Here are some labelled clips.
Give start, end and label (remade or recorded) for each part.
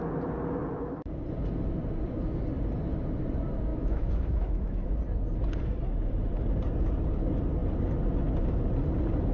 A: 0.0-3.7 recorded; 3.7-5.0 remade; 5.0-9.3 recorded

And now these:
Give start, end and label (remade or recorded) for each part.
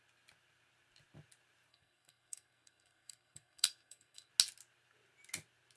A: 0.0-1.7 recorded; 1.7-4.3 remade; 4.3-5.8 recorded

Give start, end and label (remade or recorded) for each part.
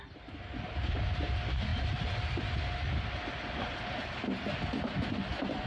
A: 0.0-5.7 recorded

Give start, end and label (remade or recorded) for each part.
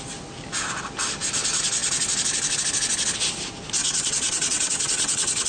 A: 0.0-3.8 recorded; 3.8-5.5 remade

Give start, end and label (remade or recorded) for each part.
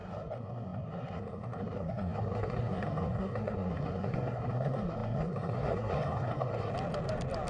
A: 0.0-6.7 remade; 6.7-7.5 recorded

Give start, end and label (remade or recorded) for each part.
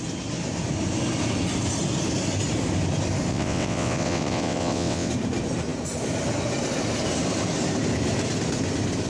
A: 0.0-3.3 recorded; 3.3-5.1 remade; 5.1-9.1 recorded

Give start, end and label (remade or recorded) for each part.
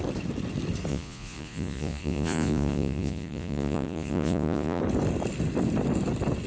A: 0.0-0.9 recorded; 0.9-4.8 remade; 4.8-6.5 recorded